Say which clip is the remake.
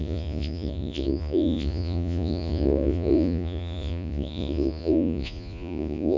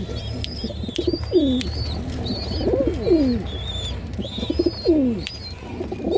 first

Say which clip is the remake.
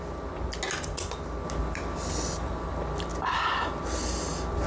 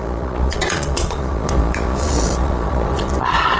second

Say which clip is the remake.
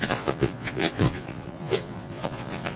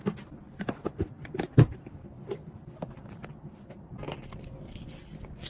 first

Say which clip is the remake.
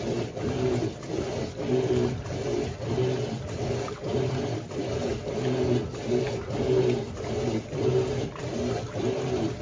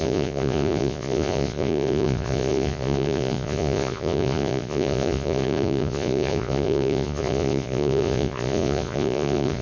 second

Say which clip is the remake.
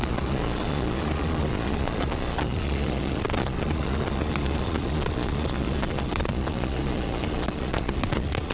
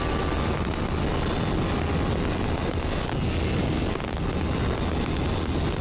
first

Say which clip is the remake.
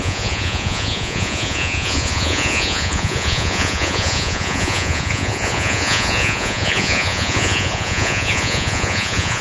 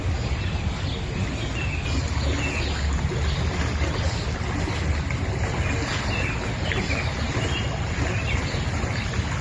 first